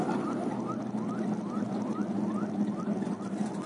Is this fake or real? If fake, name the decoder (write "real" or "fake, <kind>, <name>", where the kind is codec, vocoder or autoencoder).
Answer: real